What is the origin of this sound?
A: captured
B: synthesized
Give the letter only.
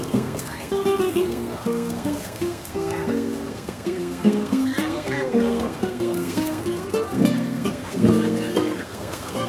B